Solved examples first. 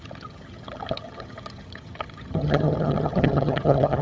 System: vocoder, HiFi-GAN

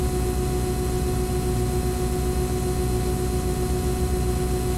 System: none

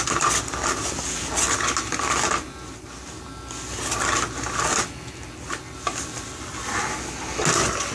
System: none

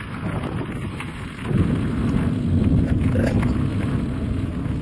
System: none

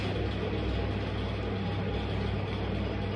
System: none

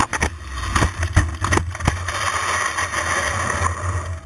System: none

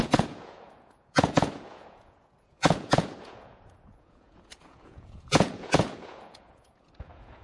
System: vocoder, Vocos